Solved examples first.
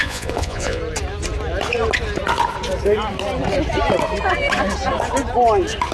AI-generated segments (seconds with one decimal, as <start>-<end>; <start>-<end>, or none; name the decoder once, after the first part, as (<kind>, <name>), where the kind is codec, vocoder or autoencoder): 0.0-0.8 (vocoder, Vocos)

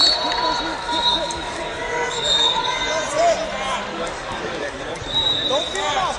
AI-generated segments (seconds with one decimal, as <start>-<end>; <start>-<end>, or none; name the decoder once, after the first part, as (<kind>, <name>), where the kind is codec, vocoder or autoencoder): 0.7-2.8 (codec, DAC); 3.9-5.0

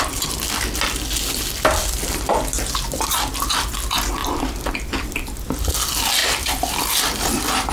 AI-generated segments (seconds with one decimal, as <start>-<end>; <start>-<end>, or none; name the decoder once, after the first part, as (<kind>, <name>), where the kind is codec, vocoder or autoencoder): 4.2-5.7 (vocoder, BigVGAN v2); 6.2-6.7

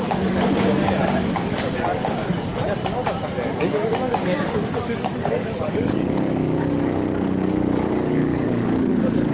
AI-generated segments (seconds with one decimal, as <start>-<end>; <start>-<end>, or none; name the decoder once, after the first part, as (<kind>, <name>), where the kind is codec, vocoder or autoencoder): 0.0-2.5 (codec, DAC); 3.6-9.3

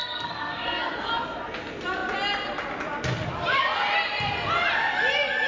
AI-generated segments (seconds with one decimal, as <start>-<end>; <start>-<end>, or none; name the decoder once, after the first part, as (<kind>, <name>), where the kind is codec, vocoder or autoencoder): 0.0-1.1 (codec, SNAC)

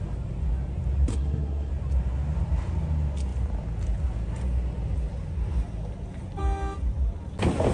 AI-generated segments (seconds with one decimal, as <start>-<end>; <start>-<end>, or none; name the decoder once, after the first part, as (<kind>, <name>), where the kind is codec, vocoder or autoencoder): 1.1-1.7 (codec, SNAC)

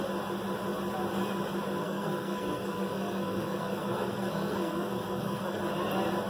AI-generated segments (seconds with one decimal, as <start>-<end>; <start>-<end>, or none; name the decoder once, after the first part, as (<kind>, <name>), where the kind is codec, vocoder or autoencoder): 1.8-5.6 (codec, SNAC)

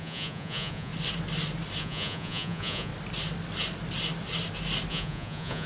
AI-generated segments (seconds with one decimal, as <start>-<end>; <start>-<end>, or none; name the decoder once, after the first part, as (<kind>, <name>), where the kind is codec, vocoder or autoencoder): 0.0-0.9 (vocoder, Vocos); 1.8-2.9; 4.9-5.7